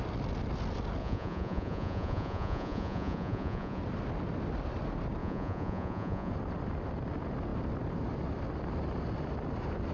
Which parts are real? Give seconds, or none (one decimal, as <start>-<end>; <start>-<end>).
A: 0.0-1.0; 3.8-5.2; 6.3-9.9